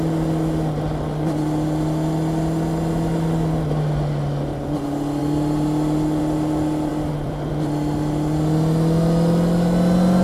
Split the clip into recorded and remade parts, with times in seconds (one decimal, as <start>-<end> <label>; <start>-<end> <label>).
0.0-6.9 recorded; 6.9-7.5 remade; 7.5-10.2 recorded